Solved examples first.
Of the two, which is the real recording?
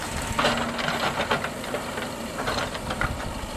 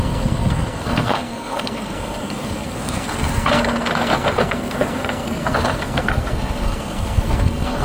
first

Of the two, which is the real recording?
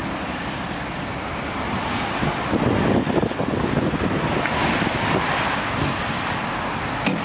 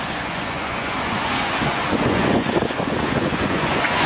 first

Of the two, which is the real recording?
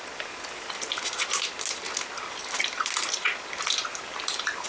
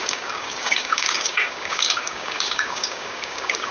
first